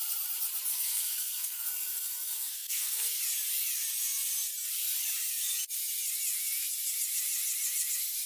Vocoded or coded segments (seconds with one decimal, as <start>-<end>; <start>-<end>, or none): 0.7-3.2

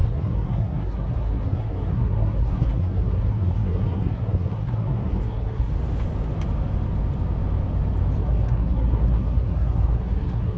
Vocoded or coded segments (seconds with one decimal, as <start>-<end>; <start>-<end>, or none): 0.0-5.7; 8.2-10.6

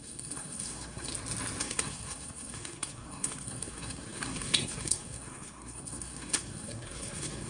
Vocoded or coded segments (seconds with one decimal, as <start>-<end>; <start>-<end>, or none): 0.0-1.1; 1.6-7.5